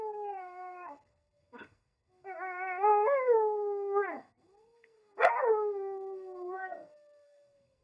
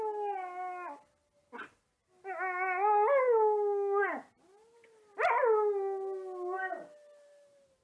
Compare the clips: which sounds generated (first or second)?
first